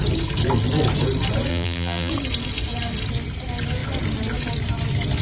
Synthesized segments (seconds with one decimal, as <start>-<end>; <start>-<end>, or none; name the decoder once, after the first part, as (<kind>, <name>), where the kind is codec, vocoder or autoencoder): 1.5-2.1 (vocoder, BigVGAN v2)